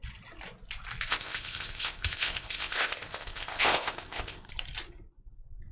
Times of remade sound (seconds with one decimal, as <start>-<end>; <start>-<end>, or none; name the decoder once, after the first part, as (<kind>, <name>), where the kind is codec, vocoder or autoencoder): 1.1-4.5 (codec, ZipCodec)